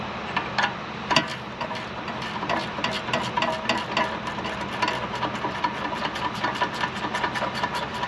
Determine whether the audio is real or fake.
real